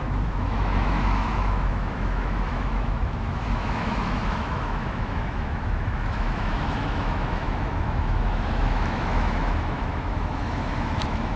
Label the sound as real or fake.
fake